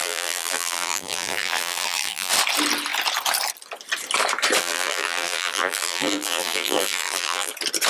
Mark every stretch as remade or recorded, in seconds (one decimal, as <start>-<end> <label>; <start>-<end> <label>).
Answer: 0.0-2.3 remade; 2.3-4.6 recorded; 4.6-7.5 remade; 7.5-7.9 recorded